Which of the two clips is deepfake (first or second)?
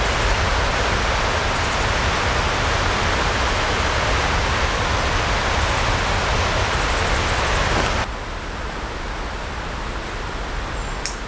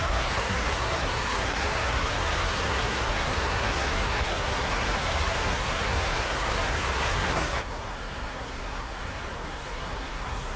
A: second